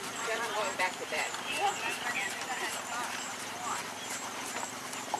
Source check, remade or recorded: remade